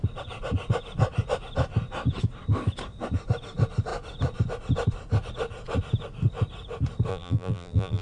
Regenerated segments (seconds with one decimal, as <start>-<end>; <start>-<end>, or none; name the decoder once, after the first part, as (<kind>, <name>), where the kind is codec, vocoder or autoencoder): 7.1-8.0 (vocoder, BigVGAN v2)

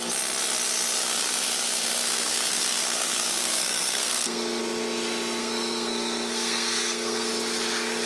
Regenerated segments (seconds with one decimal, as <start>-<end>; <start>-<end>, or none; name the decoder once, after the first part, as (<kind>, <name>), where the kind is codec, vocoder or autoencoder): 1.0-4.6 (codec, SNAC); 5.4-7.3

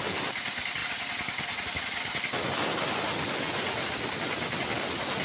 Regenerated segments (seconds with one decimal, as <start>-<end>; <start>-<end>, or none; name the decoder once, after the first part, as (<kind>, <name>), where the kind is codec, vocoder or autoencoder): none

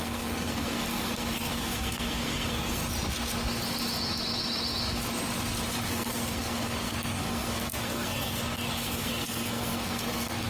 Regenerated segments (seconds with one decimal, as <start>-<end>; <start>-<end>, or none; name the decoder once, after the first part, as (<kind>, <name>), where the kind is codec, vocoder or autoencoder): 0.0-2.8 (codec, SNAC); 5.9-10.5